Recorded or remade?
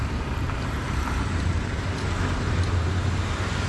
remade